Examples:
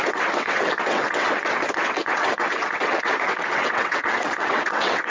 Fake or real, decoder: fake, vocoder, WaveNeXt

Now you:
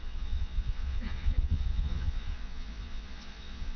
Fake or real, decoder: fake, vocoder, Vocos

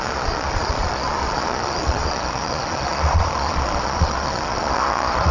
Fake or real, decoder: fake, vocoder, Vocos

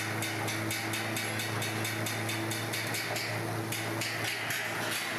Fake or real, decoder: real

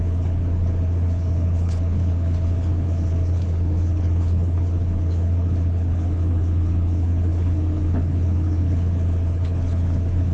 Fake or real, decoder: fake, codec, HILCodec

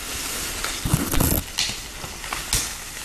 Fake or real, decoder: real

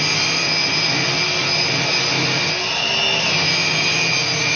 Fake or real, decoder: real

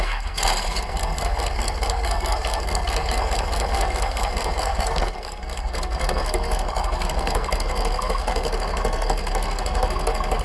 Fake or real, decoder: fake, codec, SNAC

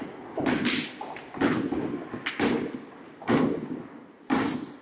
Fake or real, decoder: real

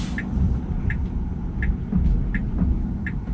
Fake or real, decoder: real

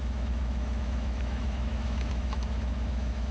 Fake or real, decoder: fake, autoencoder, DAC-VAE